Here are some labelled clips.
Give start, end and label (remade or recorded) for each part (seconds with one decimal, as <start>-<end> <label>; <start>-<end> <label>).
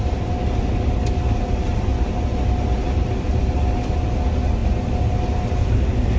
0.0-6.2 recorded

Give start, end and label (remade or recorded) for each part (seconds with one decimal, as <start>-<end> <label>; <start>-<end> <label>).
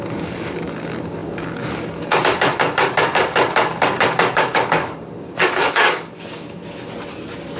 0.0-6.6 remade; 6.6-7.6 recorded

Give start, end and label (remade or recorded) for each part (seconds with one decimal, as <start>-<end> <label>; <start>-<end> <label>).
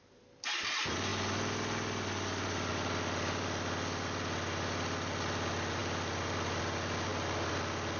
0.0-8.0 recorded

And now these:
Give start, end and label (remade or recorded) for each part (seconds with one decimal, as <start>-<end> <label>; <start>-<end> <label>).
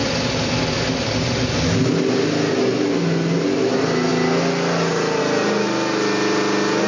0.0-6.9 recorded